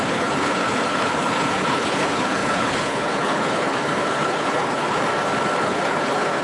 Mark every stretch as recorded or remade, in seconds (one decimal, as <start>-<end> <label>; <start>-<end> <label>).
0.0-5.1 remade; 5.1-5.6 recorded; 5.6-6.4 remade